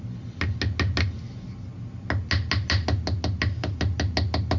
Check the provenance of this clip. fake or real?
real